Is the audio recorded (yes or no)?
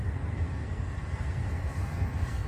no